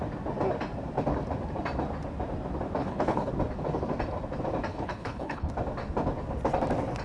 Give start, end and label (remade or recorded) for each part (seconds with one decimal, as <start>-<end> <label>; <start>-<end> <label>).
0.0-2.8 recorded; 2.8-3.3 remade; 3.3-4.7 recorded; 4.7-5.5 remade; 5.5-7.0 recorded